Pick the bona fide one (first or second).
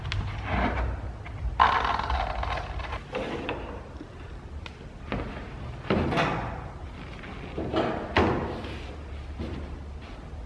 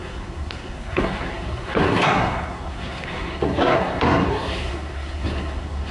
first